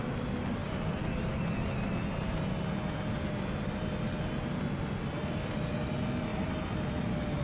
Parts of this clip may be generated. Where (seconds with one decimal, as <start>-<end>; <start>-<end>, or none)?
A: 0.6-1.3